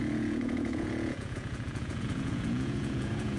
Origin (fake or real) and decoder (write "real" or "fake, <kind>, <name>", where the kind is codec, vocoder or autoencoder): fake, vocoder, Vocos